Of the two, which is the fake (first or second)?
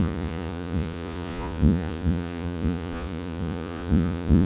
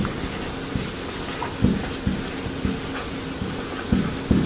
first